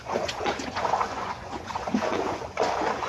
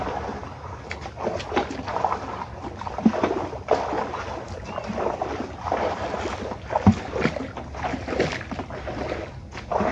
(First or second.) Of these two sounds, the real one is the second